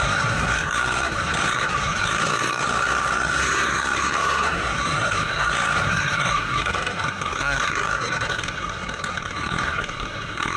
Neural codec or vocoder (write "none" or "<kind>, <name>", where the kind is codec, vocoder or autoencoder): codec, SNAC